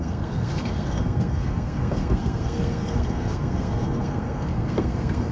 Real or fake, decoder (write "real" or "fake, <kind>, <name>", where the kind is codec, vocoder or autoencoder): fake, codec, SNAC